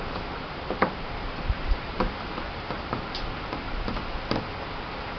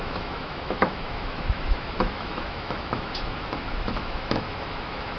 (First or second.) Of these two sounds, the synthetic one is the second